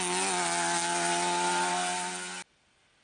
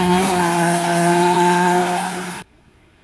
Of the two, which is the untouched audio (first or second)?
first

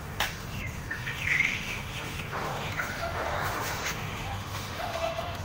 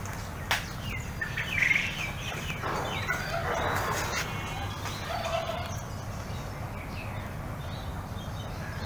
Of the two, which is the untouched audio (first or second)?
second